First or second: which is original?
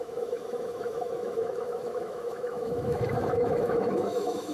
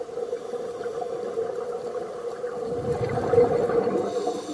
second